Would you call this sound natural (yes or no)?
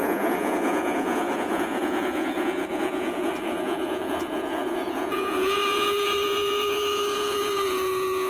no